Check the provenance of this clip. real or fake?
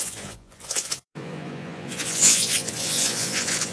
fake